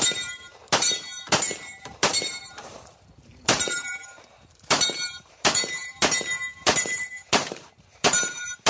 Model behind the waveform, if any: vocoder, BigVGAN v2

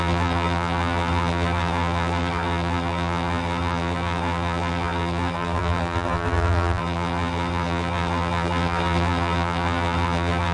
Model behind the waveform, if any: vocoder, BigVGAN v2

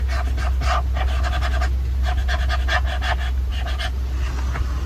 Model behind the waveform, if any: none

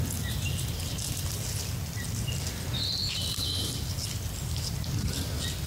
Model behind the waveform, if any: none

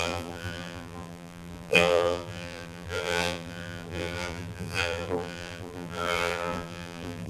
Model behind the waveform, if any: vocoder, BigVGAN v2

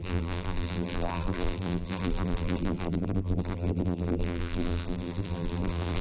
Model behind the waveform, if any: vocoder, BigVGAN v2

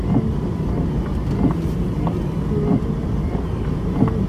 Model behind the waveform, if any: none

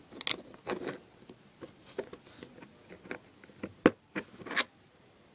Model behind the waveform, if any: none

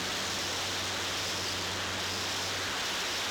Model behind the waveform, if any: none